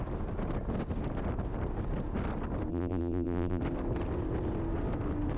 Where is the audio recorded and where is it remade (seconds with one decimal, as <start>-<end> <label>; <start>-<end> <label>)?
0.0-2.7 recorded; 2.7-3.6 remade; 3.6-5.4 recorded